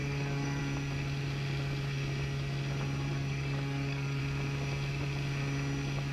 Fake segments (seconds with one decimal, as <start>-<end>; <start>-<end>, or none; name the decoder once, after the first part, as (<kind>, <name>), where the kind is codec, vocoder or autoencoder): 0.0-0.6 (codec, DAC); 3.1-4.2